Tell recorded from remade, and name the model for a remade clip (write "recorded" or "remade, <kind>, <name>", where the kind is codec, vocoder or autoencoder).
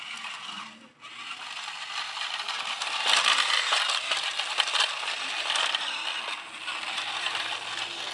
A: recorded